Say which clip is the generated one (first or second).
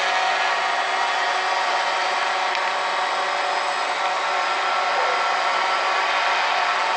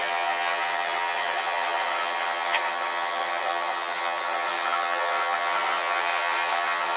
second